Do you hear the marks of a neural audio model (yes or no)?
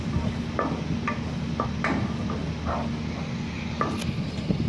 no